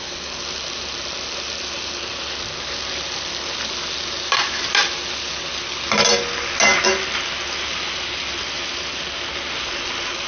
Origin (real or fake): real